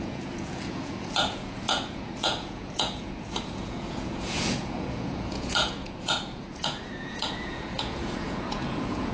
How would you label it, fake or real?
fake